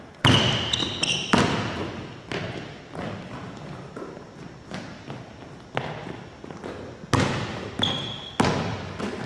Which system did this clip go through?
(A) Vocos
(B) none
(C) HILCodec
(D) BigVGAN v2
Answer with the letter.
B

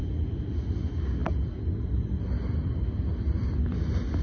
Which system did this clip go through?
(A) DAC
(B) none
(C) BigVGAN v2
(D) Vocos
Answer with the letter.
B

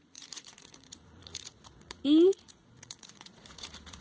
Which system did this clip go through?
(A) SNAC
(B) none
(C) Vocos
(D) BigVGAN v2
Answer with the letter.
C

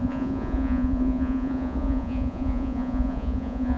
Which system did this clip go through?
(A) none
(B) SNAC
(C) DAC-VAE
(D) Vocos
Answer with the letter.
D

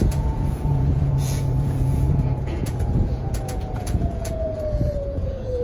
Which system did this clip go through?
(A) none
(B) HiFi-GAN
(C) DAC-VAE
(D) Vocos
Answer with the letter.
D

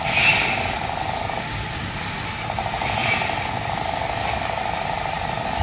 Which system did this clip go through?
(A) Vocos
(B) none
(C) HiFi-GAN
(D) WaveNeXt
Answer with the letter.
B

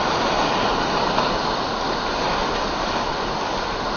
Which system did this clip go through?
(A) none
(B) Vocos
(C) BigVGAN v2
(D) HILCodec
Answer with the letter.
A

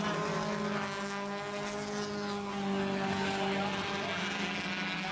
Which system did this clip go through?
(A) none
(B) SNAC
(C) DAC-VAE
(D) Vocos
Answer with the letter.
A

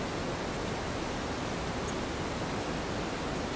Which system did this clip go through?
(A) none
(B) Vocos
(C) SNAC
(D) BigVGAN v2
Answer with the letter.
A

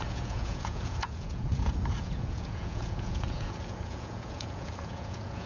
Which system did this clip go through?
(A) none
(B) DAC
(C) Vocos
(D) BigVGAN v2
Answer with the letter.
C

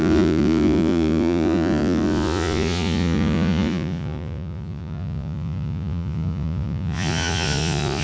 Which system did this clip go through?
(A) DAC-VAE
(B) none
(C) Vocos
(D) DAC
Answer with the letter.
C